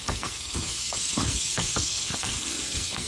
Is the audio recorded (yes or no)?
no